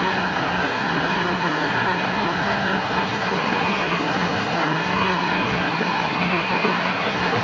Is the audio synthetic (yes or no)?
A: yes